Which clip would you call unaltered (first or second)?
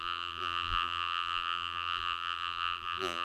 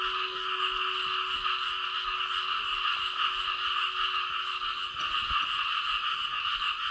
second